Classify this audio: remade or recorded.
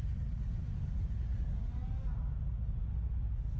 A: recorded